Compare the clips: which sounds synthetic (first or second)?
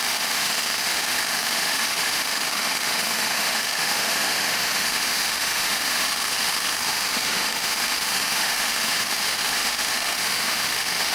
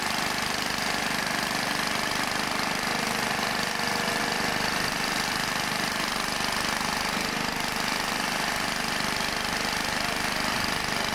first